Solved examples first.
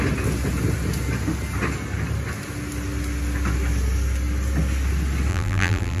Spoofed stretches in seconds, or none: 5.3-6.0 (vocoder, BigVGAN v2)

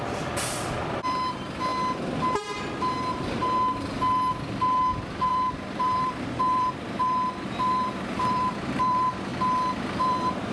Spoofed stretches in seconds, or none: 0.0-1.7 (vocoder, BigVGAN v2); 5.3-9.3; 10.0-10.5

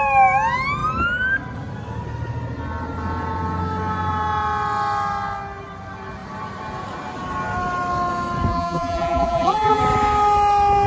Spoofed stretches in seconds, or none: 8.5-9.8 (vocoder, BigVGAN v2)

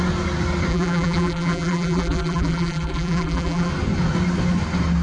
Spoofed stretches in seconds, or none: 0.7-3.7 (vocoder, BigVGAN v2)